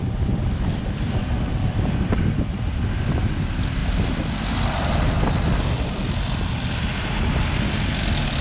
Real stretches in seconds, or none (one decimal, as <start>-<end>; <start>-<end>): 2.4-3.8; 6.4-8.4